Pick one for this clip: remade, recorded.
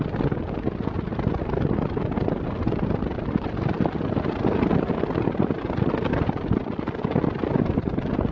recorded